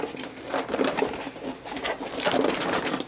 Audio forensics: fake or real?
fake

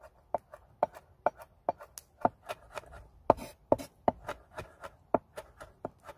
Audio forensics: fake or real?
real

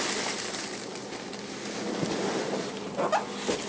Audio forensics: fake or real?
real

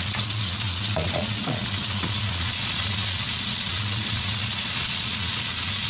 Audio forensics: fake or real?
fake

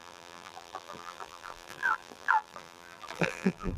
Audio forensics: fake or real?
fake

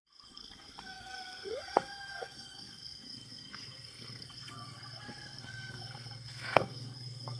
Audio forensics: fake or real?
fake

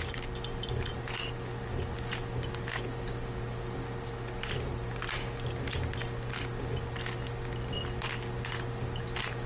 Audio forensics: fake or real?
real